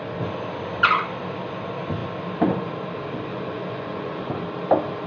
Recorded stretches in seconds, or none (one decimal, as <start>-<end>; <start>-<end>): 0.0-3.3; 4.3-5.1